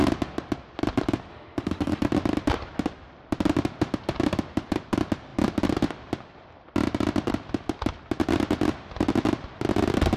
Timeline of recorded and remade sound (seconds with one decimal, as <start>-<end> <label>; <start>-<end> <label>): 0.0-1.3 recorded; 1.3-2.0 remade; 2.0-10.2 recorded